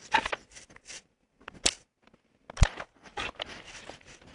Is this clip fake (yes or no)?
no